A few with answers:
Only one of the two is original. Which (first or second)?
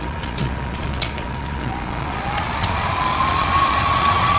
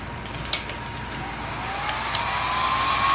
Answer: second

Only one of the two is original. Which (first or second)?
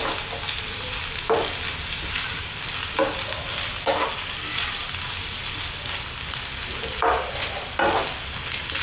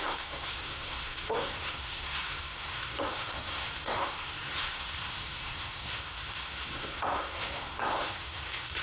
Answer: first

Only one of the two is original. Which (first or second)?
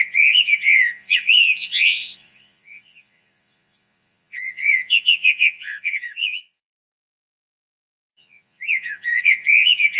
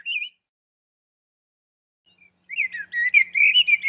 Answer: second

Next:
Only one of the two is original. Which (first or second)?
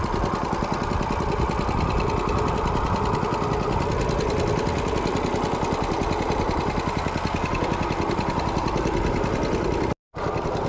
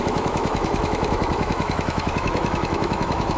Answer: first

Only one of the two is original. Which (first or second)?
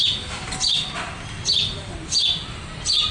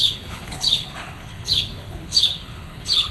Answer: first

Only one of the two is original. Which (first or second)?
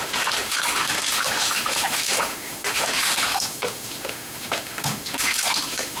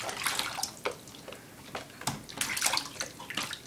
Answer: second